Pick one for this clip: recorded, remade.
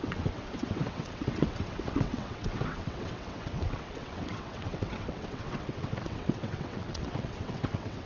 remade